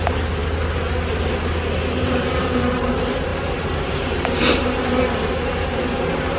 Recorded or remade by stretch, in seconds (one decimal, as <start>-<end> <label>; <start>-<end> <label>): 0.0-0.4 remade; 0.4-2.1 recorded; 2.1-6.4 remade